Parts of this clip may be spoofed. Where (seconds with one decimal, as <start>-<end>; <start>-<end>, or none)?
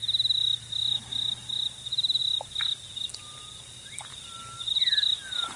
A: none